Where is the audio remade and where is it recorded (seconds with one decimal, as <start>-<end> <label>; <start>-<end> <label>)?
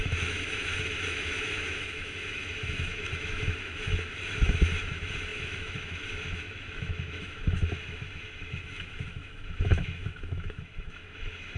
0.0-11.6 remade